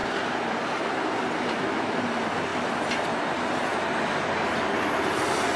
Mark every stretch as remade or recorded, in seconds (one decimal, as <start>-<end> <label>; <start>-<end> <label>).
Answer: 0.0-5.6 recorded